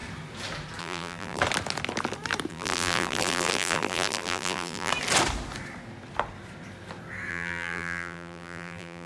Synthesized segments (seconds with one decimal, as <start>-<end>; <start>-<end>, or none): 0.8-1.4; 2.5-4.9; 7.3-9.1